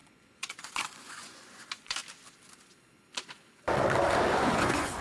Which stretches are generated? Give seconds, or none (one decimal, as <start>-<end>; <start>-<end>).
0.0-2.0; 4.3-5.0